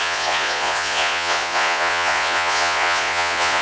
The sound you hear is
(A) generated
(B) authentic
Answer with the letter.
A